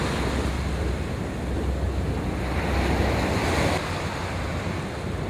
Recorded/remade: recorded